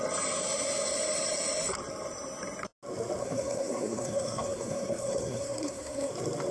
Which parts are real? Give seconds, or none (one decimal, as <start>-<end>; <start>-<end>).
0.0-3.2; 6.1-6.5